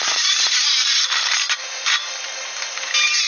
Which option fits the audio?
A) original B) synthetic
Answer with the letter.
A